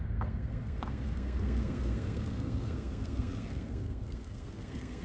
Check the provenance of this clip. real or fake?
fake